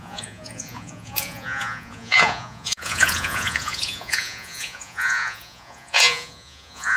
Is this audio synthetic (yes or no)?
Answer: yes